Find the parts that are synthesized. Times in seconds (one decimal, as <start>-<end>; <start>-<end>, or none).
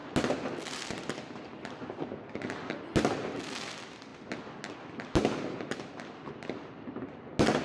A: none